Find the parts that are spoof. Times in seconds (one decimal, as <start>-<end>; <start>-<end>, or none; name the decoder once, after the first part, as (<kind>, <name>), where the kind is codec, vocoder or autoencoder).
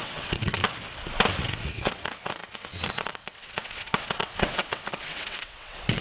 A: 0.0-0.6 (vocoder, WaveNeXt); 1.4-6.0